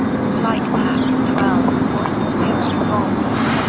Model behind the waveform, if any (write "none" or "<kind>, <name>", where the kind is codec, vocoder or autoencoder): none